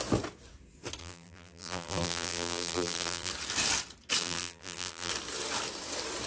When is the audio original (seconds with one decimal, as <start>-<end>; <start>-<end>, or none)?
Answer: 0.0-1.0; 3.3-4.2; 5.1-6.3